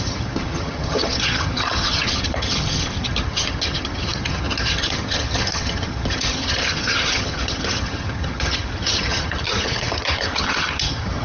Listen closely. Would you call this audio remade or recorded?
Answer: remade